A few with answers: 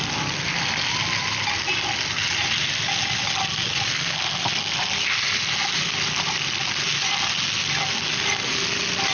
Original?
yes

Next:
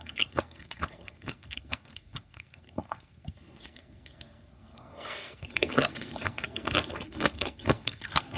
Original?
no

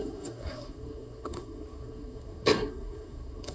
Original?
no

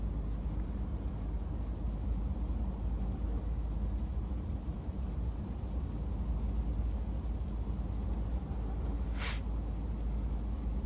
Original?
yes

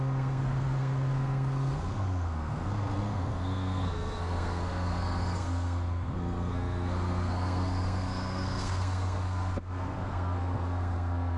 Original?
no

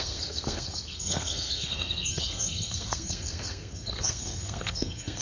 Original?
no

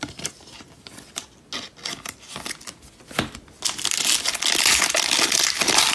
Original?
yes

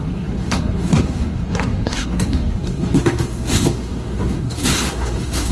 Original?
no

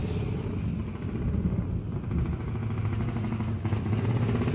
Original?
yes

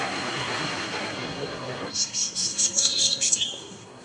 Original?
no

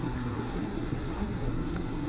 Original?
no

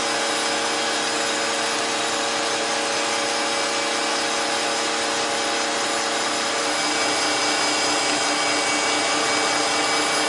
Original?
yes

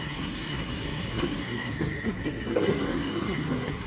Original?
no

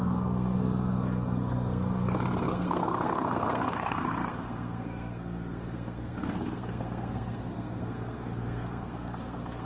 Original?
no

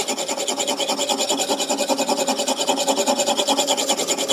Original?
yes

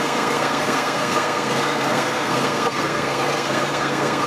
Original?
no